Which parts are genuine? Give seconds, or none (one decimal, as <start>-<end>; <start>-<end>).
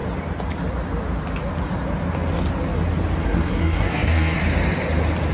0.0-3.2; 4.4-5.3